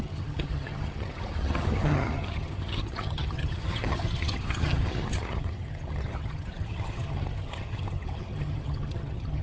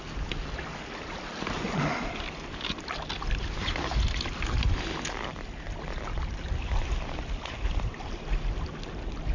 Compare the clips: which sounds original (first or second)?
second